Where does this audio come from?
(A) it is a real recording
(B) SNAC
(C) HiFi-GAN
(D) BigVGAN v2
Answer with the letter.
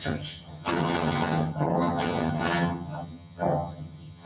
C